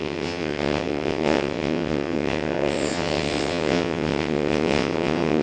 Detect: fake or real fake